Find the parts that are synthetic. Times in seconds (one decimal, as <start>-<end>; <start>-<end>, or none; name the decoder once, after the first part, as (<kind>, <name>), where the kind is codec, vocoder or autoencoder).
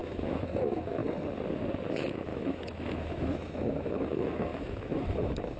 0.0-1.0 (autoencoder, DAC-VAE); 1.9-5.6